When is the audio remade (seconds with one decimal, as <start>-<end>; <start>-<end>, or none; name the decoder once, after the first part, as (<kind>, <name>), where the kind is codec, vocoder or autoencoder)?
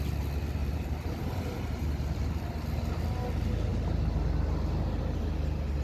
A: 0.6-2.3 (vocoder, BigVGAN v2)